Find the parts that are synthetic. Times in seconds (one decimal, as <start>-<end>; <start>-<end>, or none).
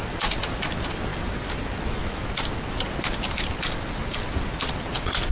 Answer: none